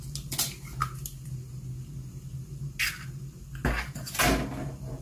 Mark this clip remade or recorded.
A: recorded